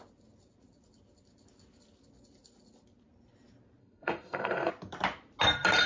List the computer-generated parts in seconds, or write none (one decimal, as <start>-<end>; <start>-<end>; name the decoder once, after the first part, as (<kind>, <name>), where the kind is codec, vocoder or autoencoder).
3.8-4.7 (codec, SNAC)